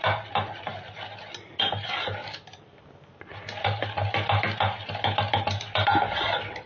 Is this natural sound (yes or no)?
yes